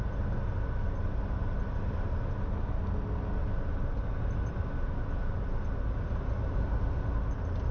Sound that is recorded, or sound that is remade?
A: recorded